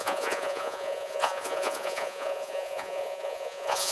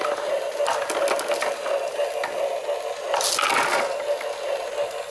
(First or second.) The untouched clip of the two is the second